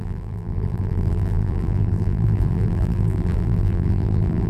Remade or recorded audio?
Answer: remade